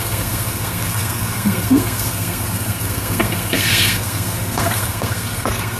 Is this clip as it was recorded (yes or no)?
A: no